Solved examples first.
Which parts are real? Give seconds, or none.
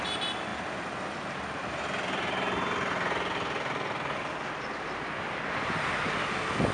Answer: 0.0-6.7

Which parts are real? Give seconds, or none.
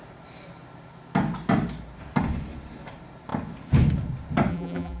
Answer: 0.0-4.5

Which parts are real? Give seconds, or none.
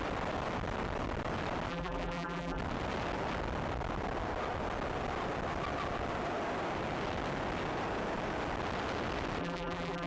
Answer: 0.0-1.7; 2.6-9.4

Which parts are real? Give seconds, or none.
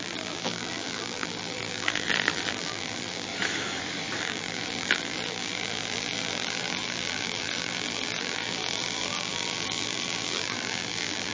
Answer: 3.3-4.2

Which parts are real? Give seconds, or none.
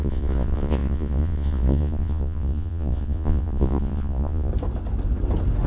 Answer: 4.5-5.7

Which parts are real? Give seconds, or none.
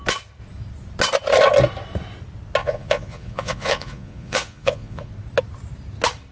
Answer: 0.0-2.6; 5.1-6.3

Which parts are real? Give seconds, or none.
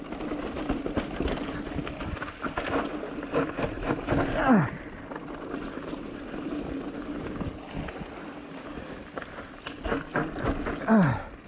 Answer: 0.0-0.8; 1.8-11.5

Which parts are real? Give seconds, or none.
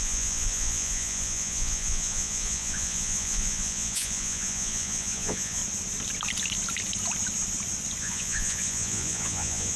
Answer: 5.6-8.0